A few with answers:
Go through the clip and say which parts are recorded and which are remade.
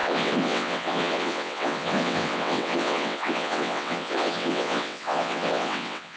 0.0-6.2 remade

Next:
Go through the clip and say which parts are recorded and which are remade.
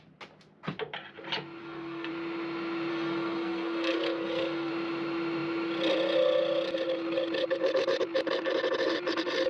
0.0-1.6 recorded; 1.6-2.1 remade; 2.1-2.9 recorded; 2.9-4.7 remade; 4.7-9.5 recorded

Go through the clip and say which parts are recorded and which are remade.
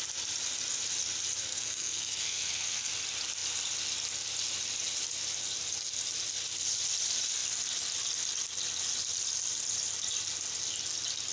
0.0-1.5 recorded; 1.5-2.9 remade; 2.9-11.3 recorded